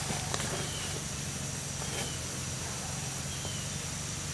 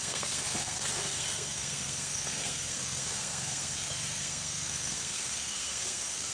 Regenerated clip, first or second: second